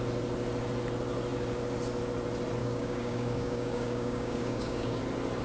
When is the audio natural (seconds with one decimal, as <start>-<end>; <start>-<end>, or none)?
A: 0.0-2.6; 5.0-5.4